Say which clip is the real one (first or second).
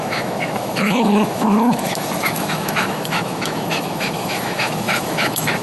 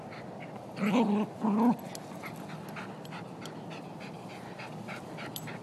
second